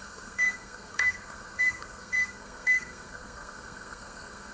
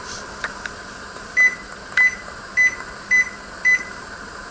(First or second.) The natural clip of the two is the second